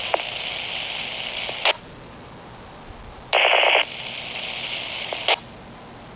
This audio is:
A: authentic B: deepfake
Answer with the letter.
A